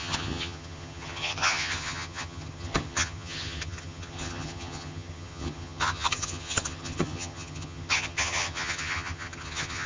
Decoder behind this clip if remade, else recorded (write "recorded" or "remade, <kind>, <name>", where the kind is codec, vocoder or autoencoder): remade, vocoder, HiFi-GAN